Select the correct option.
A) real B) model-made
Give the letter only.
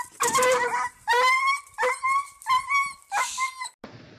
A